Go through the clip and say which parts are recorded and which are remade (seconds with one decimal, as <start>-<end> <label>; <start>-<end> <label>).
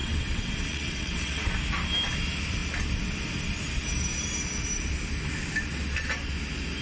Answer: 0.0-1.4 remade; 1.4-6.8 recorded